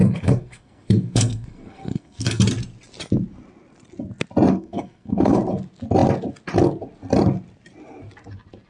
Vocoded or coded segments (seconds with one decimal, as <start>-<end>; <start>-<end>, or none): 0.0-2.4; 4.5-5.4